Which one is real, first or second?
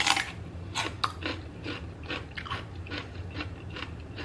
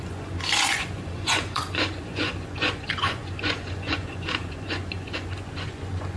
first